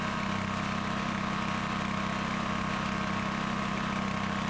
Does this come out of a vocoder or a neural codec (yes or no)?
no